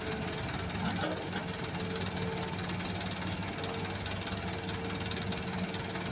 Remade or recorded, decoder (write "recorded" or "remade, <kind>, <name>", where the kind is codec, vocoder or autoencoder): recorded